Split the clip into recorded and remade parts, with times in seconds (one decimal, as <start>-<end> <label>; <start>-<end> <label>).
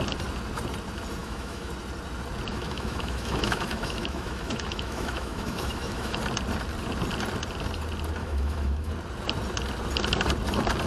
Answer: 0.0-1.2 recorded; 1.2-1.7 remade; 1.7-2.5 recorded; 2.5-6.2 remade; 6.2-8.2 recorded; 8.2-8.9 remade; 8.9-10.9 recorded